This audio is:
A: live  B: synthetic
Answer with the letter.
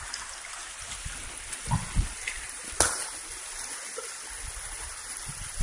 A